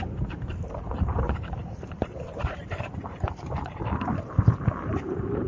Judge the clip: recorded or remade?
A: remade